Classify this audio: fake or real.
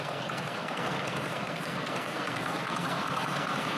fake